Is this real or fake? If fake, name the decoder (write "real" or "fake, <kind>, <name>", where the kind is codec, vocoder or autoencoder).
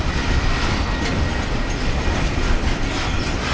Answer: fake, vocoder, BigVGAN v2